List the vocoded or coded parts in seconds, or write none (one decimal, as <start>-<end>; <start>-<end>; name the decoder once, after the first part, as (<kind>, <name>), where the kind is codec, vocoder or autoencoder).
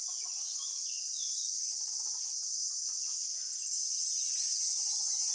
0.5-2.2 (vocoder, BigVGAN v2); 2.6-3.3